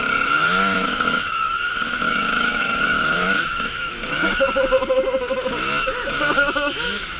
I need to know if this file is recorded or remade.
remade